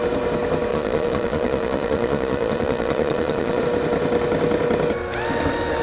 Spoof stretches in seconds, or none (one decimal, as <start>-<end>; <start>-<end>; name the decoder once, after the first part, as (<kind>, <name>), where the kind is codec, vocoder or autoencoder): 0.7-3.6 (vocoder, Vocos)